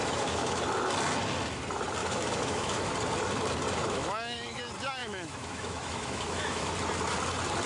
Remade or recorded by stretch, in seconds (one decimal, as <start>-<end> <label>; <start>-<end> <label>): 0.0-0.6 remade; 0.6-2.0 recorded; 2.0-2.9 remade; 2.9-3.8 recorded; 3.8-4.6 remade; 4.6-5.0 recorded; 5.0-6.7 remade; 6.7-7.7 recorded